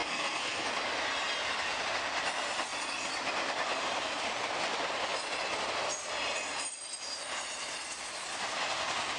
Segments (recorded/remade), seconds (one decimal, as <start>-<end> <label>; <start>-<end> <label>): 0.0-0.7 remade; 0.7-9.2 recorded

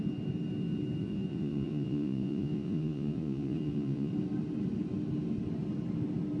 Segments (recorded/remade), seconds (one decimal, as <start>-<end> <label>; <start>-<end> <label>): 0.0-1.0 recorded; 1.0-4.1 remade; 4.1-6.4 recorded

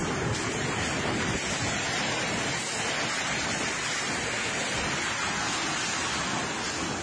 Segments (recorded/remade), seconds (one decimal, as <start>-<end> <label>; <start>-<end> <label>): 0.0-7.0 recorded

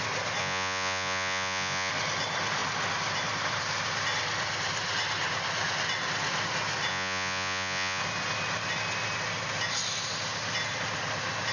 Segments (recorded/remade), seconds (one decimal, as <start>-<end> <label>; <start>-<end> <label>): 0.0-0.4 recorded; 0.4-1.9 remade; 1.9-6.9 recorded; 6.9-8.0 remade; 8.0-11.5 recorded

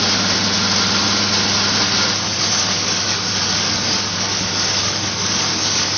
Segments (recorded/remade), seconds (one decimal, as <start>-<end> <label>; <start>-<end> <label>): 0.0-2.3 recorded; 2.3-6.0 remade

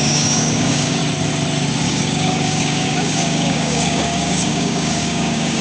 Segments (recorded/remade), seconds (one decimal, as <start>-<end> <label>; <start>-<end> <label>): 0.0-1.0 remade; 1.0-1.8 recorded; 1.8-5.6 remade